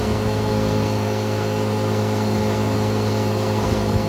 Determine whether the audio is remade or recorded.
remade